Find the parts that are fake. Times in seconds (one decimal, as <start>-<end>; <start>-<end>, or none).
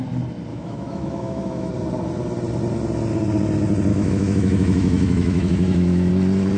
0.5-1.7; 3.9-6.1